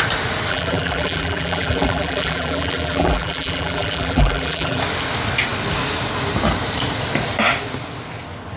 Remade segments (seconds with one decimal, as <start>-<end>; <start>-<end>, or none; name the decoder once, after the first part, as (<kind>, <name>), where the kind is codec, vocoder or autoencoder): 0.5-4.8 (vocoder, BigVGAN v2)